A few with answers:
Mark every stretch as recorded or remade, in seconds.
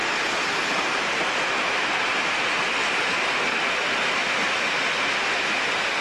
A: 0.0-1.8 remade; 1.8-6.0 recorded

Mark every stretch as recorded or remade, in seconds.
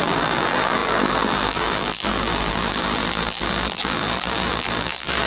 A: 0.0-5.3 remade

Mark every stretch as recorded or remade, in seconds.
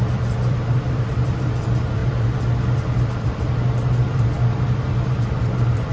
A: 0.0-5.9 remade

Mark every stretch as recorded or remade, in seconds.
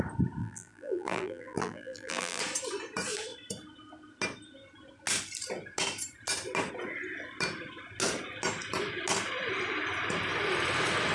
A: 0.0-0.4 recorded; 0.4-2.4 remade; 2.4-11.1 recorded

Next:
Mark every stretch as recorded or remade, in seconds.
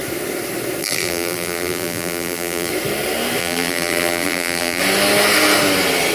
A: 0.0-0.8 recorded; 0.8-2.7 remade; 2.7-3.4 recorded; 3.4-4.8 remade; 4.8-6.1 recorded